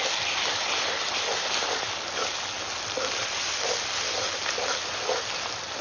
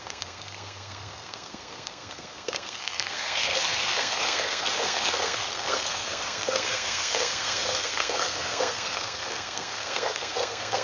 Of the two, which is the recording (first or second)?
first